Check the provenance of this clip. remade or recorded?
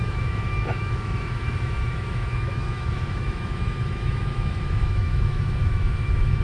remade